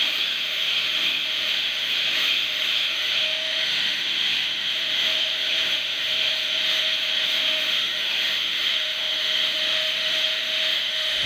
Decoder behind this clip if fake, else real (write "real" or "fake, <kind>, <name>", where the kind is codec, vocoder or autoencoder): fake, autoencoder, DAC-VAE